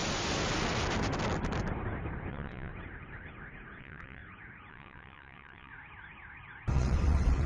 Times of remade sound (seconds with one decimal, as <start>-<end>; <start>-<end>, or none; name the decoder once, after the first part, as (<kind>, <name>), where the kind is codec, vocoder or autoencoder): 2.3-2.7 (vocoder, WaveNeXt); 3.8-4.2; 4.7-5.7; 6.7-7.5